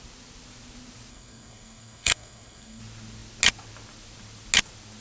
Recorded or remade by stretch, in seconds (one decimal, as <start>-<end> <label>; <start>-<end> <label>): 0.0-1.1 recorded; 1.1-2.8 remade; 2.8-5.0 recorded